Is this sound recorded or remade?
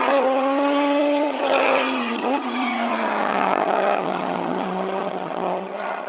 remade